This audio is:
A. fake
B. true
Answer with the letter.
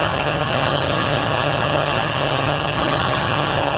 A